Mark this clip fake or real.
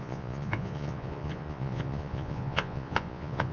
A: fake